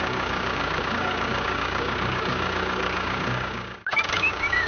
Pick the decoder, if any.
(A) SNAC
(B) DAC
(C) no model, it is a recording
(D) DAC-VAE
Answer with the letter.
B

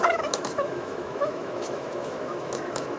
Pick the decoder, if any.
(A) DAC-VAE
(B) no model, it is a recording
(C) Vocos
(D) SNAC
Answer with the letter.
A